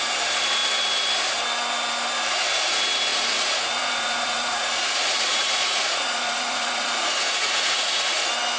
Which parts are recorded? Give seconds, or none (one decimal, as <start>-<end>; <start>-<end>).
0.0-3.1; 8.2-8.6